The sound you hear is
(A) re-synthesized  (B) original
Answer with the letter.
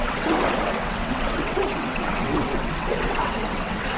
A